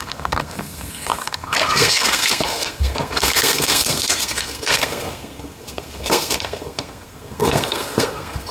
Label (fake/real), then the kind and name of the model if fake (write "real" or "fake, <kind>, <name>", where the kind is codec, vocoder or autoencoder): fake, codec, SNAC